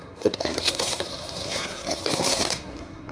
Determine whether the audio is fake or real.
fake